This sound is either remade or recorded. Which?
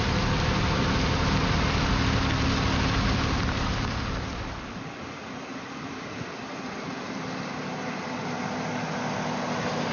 recorded